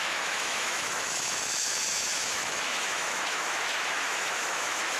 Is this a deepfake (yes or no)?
yes